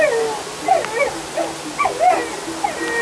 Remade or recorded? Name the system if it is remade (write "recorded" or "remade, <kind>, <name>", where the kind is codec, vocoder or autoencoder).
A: recorded